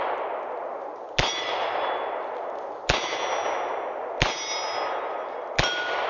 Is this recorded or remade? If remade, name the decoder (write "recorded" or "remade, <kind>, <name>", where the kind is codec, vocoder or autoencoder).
recorded